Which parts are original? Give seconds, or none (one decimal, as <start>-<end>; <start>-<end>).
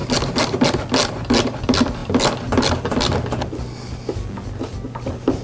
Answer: 0.0-5.4